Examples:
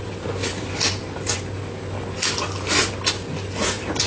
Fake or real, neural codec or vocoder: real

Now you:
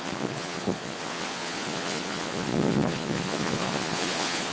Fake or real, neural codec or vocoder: fake, vocoder, Vocos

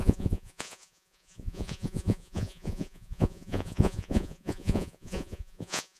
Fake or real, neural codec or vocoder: fake, vocoder, Vocos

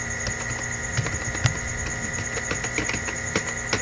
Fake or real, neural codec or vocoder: real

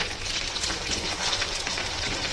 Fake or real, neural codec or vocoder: fake, vocoder, Vocos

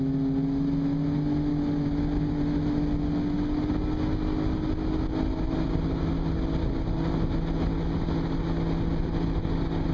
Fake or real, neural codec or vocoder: real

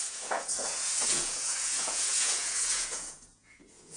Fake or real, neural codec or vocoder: fake, vocoder, Vocos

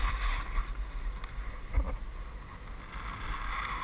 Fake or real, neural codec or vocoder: real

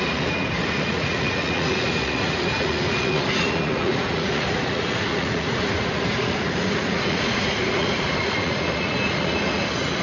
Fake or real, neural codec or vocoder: fake, vocoder, Vocos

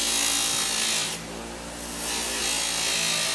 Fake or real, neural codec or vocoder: real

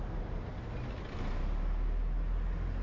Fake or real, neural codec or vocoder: real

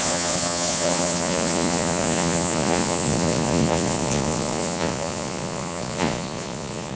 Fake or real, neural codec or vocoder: fake, vocoder, Vocos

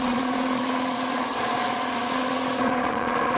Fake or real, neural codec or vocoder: fake, vocoder, Vocos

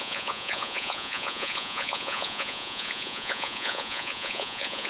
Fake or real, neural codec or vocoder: fake, vocoder, Vocos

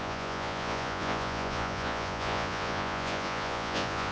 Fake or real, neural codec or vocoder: fake, vocoder, Vocos